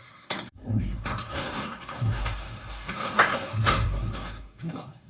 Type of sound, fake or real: fake